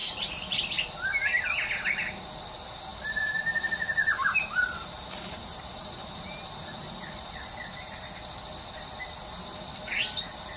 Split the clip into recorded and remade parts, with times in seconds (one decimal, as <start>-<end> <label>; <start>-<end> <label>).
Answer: 0.0-0.6 remade; 0.6-2.9 recorded; 2.9-7.9 remade; 7.9-10.6 recorded